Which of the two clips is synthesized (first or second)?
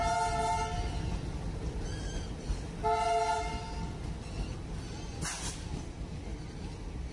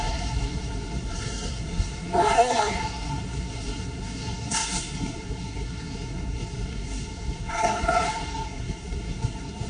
second